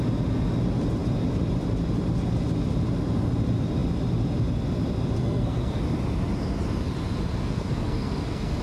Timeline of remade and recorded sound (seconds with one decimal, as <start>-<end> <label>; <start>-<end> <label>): 0.0-5.2 recorded; 5.2-5.8 remade; 5.8-7.4 recorded; 7.4-8.6 remade